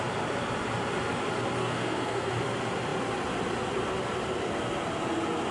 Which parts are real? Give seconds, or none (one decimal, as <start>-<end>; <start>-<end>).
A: 0.0-1.6; 2.3-5.5